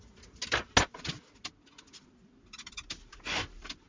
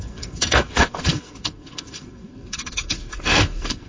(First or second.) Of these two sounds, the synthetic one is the second